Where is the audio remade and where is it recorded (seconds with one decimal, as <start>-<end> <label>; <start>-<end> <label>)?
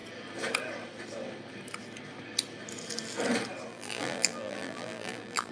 0.0-3.7 recorded; 3.7-5.5 remade